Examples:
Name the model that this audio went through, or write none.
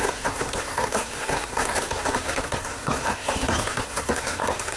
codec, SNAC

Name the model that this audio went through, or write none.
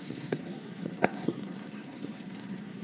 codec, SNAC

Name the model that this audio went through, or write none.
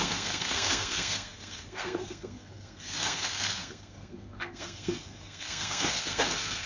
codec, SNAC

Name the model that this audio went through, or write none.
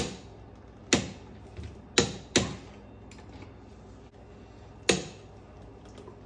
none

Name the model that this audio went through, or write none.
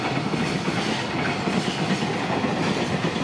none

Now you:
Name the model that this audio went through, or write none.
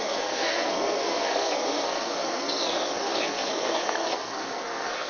codec, SNAC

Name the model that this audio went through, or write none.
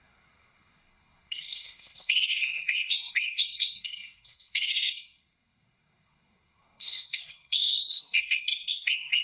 codec, SNAC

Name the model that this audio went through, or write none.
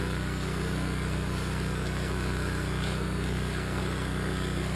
codec, SNAC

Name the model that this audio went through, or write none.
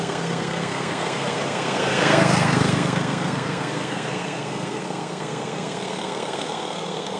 codec, SNAC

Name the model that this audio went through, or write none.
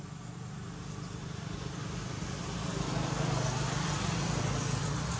none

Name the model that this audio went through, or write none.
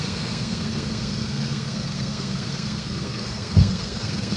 codec, SNAC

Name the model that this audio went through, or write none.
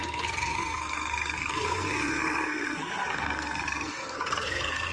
codec, SNAC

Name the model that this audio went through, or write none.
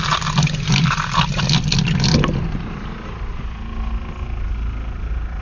none